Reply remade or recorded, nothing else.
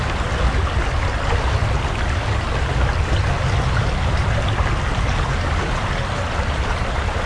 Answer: recorded